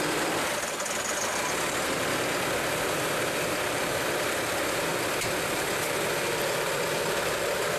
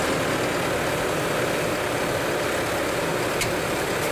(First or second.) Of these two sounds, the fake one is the first